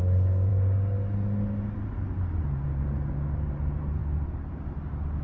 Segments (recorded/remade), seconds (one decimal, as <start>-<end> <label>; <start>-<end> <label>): 0.0-5.2 recorded